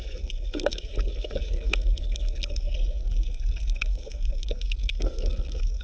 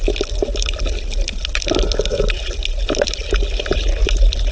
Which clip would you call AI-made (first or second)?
first